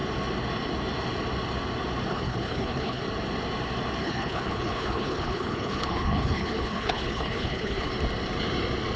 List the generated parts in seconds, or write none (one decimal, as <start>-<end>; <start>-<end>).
2.1-3.0; 4.0-7.9